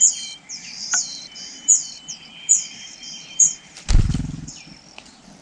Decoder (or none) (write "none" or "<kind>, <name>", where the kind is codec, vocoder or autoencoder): vocoder, BigVGAN v2